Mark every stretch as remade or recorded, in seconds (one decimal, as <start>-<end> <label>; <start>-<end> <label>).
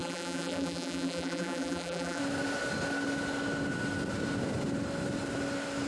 0.0-2.2 remade; 2.2-5.9 recorded